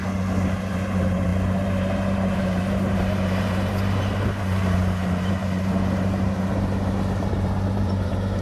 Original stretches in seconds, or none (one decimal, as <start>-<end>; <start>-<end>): 0.0-0.7